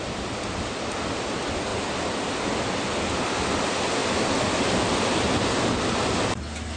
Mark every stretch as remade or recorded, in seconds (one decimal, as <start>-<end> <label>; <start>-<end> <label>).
0.0-6.8 recorded